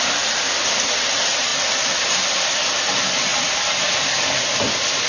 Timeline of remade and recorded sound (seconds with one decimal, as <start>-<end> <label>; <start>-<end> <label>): 0.0-5.1 remade